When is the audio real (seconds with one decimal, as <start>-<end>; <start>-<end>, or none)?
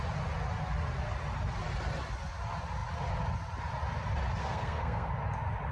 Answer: 0.0-4.4; 5.1-5.7